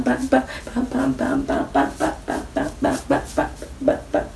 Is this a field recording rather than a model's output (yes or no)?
yes